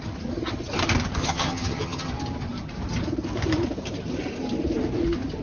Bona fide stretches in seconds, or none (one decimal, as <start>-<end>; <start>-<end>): 0.0-1.2; 2.1-5.4